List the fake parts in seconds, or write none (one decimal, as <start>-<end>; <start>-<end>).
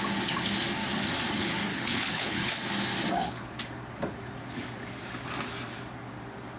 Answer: 1.7-2.5